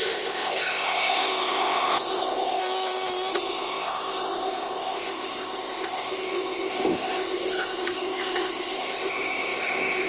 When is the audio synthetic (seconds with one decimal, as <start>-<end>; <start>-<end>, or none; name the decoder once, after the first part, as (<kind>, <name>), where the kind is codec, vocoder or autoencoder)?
0.0-2.6 (codec, ZipCodec); 3.3-10.1